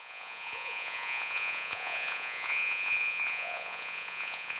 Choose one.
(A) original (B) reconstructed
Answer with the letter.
B